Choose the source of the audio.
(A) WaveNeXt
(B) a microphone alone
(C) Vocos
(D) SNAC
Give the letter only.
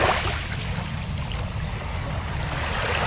B